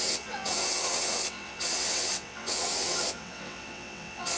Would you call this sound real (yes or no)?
no